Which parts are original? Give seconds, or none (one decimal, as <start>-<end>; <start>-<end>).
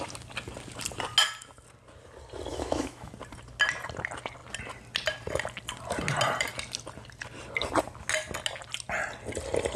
0.0-2.5; 3.1-9.8